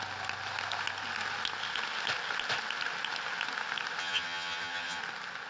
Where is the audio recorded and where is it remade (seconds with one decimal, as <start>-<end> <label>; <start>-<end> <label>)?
0.0-4.0 recorded; 4.0-5.0 remade; 5.0-5.5 recorded